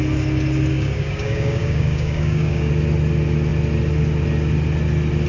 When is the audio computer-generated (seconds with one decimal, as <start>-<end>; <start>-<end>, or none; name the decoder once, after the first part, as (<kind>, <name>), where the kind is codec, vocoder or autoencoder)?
0.7-2.7 (codec, DAC)